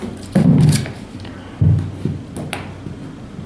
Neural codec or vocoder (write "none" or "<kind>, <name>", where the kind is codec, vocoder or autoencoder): none